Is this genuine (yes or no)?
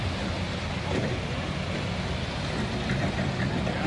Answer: yes